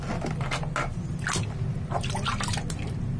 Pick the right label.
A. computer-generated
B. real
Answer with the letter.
B